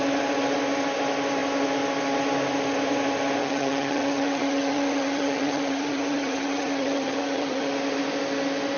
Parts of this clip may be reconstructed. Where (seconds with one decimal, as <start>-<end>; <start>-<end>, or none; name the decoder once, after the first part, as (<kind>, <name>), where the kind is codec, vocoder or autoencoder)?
3.4-7.7 (vocoder, HiFi-GAN)